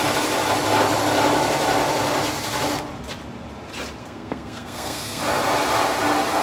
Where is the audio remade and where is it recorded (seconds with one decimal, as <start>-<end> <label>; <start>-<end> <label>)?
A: 0.0-4.0 recorded; 4.0-5.2 remade; 5.2-6.4 recorded